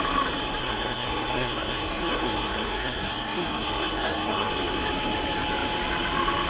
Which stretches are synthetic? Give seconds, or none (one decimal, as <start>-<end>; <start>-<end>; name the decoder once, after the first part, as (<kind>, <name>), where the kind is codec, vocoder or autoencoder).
0.6-4.5 (codec, SNAC)